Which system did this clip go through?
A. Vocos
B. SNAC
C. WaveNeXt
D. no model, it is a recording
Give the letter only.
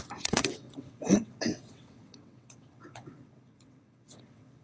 C